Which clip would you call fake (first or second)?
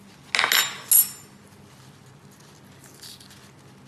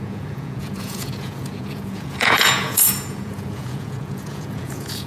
second